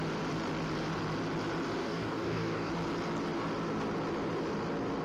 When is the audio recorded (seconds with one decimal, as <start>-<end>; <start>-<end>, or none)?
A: 0.0-1.8; 2.7-5.0